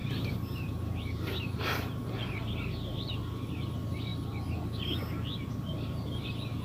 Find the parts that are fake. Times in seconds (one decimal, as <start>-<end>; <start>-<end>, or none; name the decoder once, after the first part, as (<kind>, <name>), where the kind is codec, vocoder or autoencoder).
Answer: 0.0-3.1 (vocoder, BigVGAN v2)